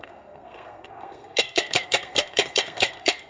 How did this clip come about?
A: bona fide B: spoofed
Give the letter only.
B